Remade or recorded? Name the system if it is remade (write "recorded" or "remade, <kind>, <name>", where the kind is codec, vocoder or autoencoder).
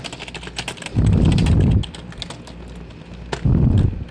recorded